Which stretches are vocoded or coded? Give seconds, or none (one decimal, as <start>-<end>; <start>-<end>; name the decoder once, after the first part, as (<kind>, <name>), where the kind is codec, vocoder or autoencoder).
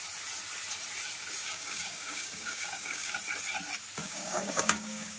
1.4-3.1 (codec, DAC); 4.0-5.2